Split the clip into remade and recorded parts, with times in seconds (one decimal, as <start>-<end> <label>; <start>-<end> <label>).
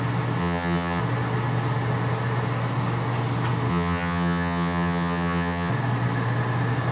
0.0-0.4 recorded; 0.4-1.0 remade; 1.0-3.7 recorded; 3.7-5.7 remade; 5.7-6.9 recorded